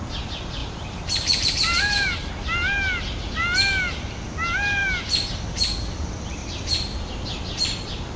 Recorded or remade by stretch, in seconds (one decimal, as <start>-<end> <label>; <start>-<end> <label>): 0.0-0.6 recorded; 0.6-2.3 remade; 2.3-6.4 recorded; 6.4-7.0 remade; 7.0-8.2 recorded